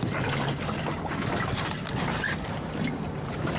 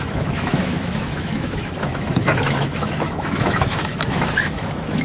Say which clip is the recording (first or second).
first